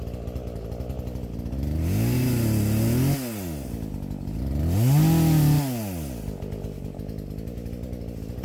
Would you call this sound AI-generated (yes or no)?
no